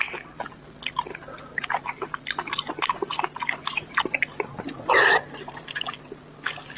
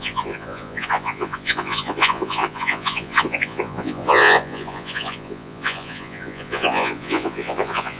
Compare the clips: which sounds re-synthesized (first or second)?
second